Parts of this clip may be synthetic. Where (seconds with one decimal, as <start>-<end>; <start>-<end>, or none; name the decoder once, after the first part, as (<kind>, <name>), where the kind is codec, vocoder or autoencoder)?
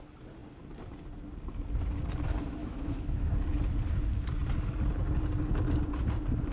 2.6-3.3 (autoencoder, DAC-VAE)